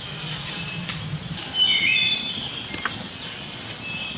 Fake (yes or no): no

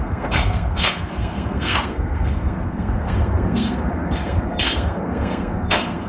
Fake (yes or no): yes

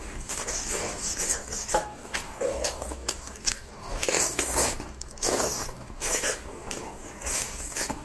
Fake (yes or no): yes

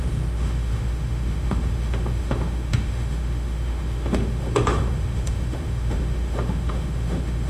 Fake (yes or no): yes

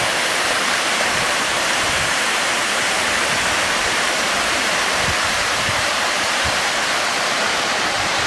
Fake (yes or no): yes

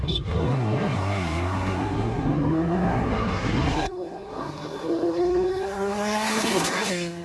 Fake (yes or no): yes